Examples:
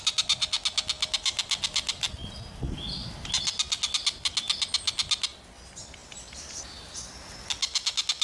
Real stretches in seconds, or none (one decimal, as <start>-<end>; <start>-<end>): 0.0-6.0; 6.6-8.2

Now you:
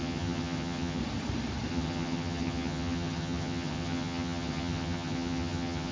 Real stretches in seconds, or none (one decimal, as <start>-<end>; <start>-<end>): 1.0-1.7

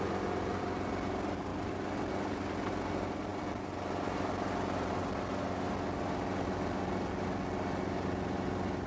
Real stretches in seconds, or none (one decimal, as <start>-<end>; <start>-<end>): 0.0-8.9

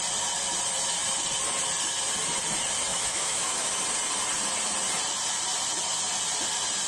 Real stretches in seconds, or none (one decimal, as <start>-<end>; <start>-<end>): 0.0-2.9; 3.8-6.9

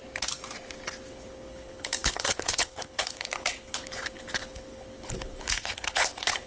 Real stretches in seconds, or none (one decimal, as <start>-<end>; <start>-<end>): 0.0-1.1

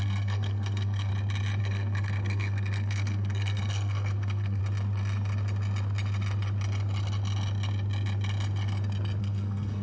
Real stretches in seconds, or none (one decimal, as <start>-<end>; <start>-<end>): 1.1-1.6; 4.6-9.2

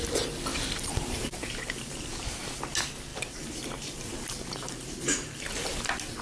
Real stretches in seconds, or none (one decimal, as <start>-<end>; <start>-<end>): 0.0-0.5; 2.4-3.1; 5.8-6.2